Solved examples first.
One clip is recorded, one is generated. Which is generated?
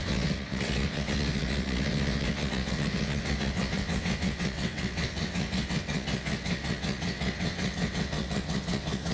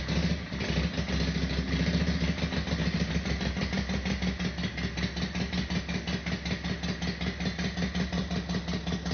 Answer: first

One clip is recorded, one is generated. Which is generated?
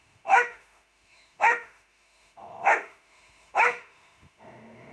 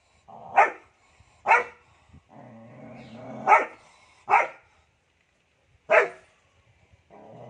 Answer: first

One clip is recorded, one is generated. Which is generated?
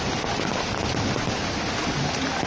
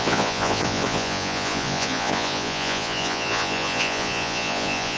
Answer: second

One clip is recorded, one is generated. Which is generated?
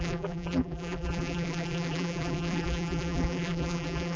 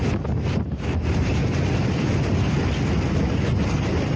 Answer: first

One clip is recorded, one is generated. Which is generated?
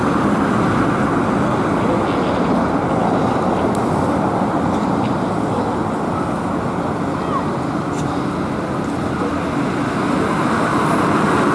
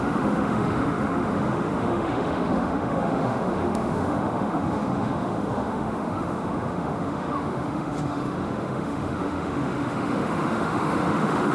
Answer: second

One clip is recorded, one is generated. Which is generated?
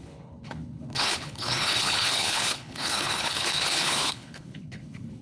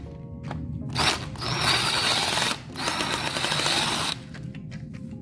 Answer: first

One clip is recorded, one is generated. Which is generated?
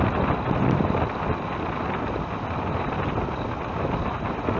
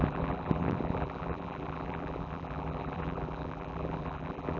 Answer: second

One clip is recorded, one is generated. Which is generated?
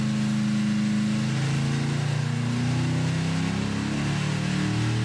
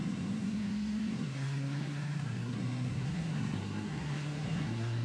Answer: second